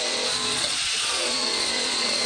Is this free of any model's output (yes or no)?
no